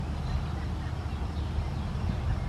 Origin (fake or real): real